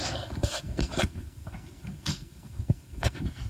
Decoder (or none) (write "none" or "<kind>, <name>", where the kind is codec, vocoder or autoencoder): codec, SNAC